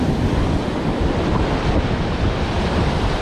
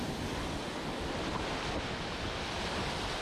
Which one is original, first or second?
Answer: second